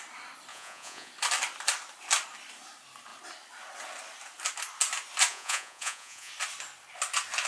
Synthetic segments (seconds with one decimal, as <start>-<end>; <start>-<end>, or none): 0.5-1.1; 5.3-6.3